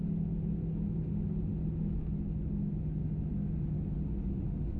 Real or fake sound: real